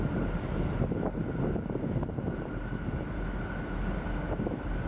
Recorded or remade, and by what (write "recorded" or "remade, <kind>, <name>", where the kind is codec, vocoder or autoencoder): recorded